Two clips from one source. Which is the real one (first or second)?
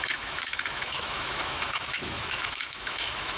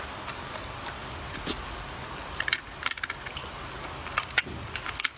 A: second